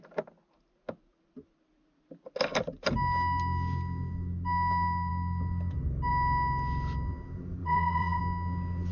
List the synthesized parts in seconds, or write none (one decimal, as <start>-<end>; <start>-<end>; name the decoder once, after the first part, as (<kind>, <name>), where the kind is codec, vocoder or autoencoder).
7.6-8.2 (vocoder, Vocos)